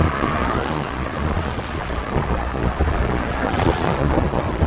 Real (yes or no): no